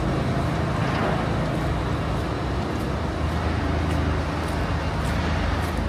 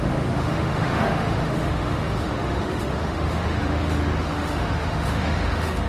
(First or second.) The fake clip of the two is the second